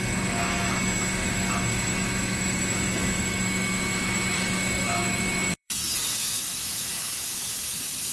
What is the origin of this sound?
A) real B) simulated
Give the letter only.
B